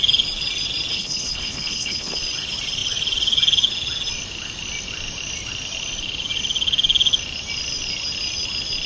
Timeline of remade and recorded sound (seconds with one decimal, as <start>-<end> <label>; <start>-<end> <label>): 0.0-0.9 recorded; 0.9-2.2 remade; 2.2-8.9 recorded